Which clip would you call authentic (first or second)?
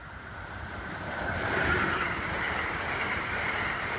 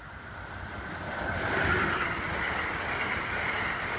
second